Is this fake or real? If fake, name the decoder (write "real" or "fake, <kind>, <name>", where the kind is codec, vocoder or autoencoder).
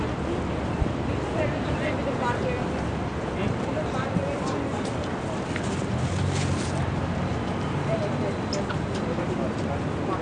real